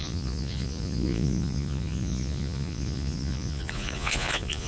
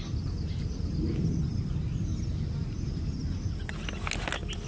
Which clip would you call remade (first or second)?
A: first